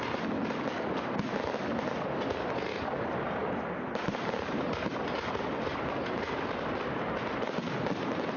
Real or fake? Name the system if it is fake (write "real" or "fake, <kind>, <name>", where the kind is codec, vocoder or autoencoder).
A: real